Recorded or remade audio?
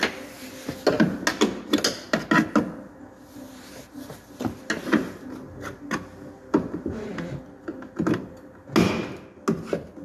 recorded